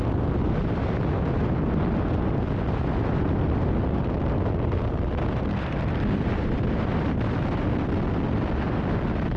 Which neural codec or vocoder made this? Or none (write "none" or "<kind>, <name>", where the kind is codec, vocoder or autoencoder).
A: none